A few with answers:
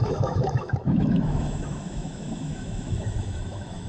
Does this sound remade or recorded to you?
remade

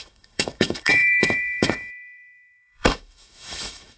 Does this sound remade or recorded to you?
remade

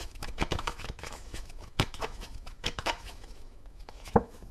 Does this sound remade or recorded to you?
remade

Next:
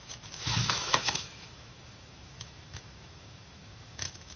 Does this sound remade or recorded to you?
remade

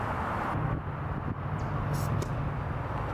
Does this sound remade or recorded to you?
recorded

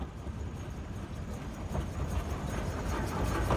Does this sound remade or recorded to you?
recorded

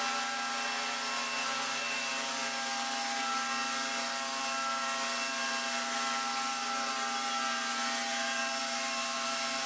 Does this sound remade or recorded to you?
recorded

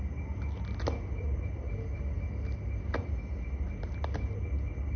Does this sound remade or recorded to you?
recorded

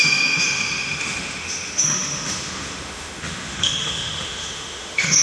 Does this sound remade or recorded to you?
remade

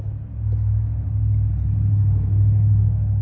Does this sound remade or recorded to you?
recorded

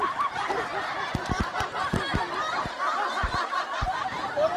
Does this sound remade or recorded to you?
recorded